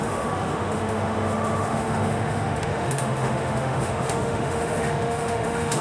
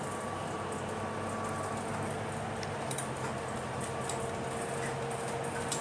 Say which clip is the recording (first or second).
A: second